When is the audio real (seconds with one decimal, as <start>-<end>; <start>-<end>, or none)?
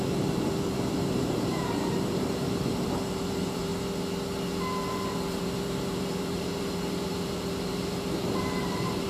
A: 3.7-4.9